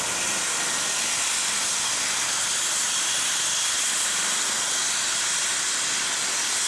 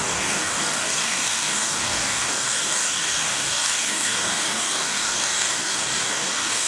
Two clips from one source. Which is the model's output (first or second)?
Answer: second